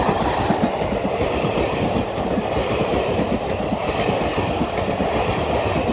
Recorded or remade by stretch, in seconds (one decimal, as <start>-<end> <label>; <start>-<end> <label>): 0.0-5.9 recorded

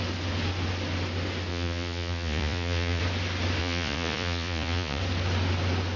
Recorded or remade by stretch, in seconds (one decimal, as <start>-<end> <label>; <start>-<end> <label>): 0.0-1.5 recorded; 1.5-3.0 remade; 3.0-3.6 recorded; 3.6-5.0 remade; 5.0-6.0 recorded